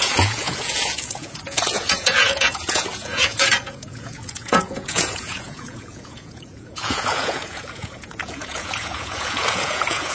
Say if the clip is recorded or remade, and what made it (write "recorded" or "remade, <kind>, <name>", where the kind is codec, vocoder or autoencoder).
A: remade, vocoder, Vocos